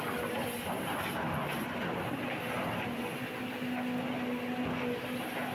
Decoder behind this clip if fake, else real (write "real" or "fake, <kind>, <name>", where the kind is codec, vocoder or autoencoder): real